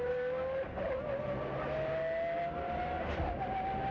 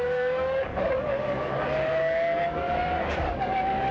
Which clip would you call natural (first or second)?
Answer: first